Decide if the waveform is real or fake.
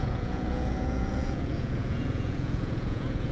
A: fake